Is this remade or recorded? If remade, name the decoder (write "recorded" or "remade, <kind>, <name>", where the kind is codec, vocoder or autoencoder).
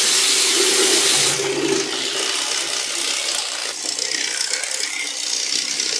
recorded